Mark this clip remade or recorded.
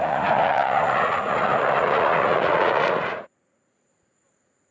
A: remade